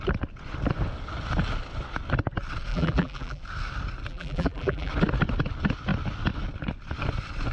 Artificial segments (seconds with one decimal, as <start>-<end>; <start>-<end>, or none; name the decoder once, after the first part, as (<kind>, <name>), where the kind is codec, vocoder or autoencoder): 2.7-3.4 (vocoder, BigVGAN v2); 4.1-4.9